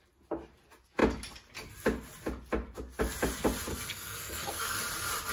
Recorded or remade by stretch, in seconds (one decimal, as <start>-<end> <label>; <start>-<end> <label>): 0.0-3.7 recorded; 3.7-4.8 remade; 4.8-5.3 recorded